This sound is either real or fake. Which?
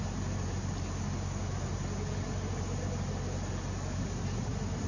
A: real